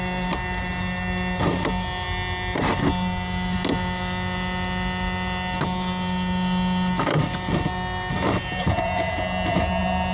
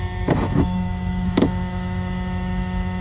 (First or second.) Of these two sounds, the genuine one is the first